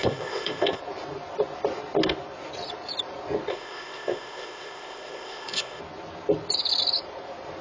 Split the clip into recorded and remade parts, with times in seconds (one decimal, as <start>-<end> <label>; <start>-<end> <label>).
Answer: 0.0-0.8 remade; 0.8-3.5 recorded; 3.5-5.8 remade; 5.8-7.6 recorded